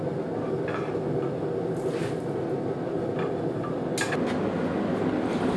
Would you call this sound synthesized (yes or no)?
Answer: no